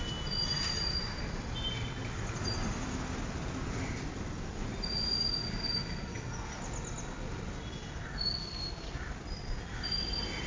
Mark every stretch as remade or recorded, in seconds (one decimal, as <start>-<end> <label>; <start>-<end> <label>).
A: 0.0-10.5 recorded

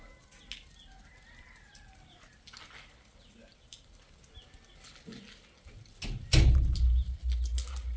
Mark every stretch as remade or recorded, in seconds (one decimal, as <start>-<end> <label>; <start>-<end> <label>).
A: 0.0-8.0 recorded